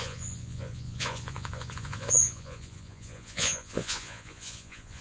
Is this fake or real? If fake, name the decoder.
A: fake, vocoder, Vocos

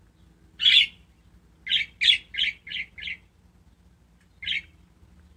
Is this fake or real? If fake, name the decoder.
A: real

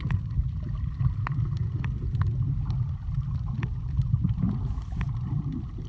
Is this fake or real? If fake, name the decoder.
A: real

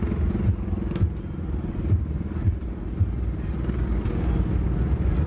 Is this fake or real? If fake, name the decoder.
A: real